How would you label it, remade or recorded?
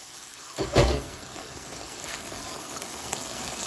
remade